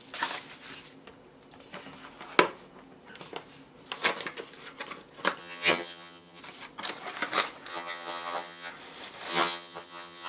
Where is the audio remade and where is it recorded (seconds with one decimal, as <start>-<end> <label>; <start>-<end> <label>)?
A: 0.0-5.4 recorded; 5.4-6.4 remade; 6.4-7.7 recorded; 7.7-8.7 remade; 8.7-9.3 recorded; 9.3-10.3 remade